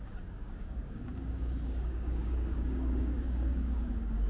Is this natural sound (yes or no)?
no